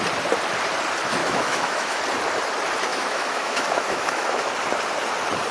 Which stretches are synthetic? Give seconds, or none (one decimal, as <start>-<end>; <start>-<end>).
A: 1.2-2.0; 2.9-4.5